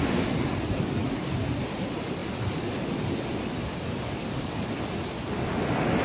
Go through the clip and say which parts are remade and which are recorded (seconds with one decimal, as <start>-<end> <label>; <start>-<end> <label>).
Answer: 0.0-1.0 recorded; 1.0-1.8 remade; 1.8-6.0 recorded